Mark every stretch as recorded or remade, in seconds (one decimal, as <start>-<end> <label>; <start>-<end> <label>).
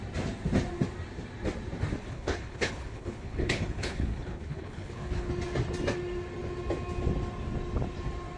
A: 0.0-2.0 recorded; 2.0-5.3 remade; 5.3-8.4 recorded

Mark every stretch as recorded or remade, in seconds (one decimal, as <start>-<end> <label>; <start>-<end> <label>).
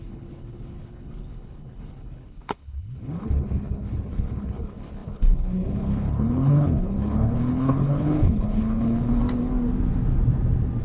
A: 0.0-9.2 remade; 9.2-10.8 recorded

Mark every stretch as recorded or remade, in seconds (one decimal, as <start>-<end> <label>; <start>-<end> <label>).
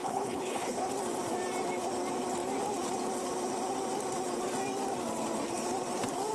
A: 0.0-0.9 remade; 0.9-6.3 recorded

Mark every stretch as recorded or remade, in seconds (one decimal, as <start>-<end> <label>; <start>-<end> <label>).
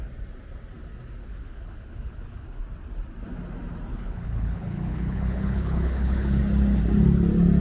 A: 0.0-1.2 recorded; 1.2-2.6 remade; 2.6-3.9 recorded; 3.9-6.4 remade; 6.4-7.6 recorded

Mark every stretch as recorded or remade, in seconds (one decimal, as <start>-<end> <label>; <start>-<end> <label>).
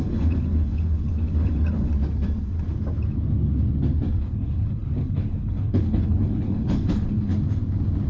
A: 0.0-1.9 remade; 1.9-4.2 recorded; 4.2-7.3 remade; 7.3-8.1 recorded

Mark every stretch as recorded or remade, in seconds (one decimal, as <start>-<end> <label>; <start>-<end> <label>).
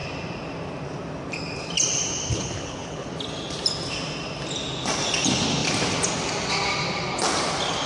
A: 0.0-2.3 recorded; 2.3-3.1 remade; 3.1-7.9 recorded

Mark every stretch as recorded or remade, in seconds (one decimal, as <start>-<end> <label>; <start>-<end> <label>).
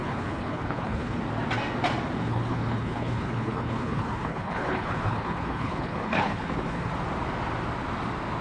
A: 0.0-1.2 remade; 1.2-2.2 recorded; 2.2-6.9 remade; 6.9-8.4 recorded